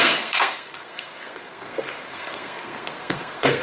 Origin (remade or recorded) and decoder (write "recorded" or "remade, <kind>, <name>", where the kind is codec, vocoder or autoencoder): remade, codec, SNAC